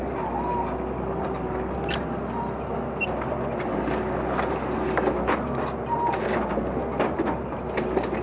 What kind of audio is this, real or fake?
real